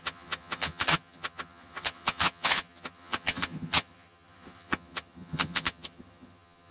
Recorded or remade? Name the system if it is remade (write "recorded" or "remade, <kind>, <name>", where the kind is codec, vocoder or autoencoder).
remade, vocoder, HiFi-GAN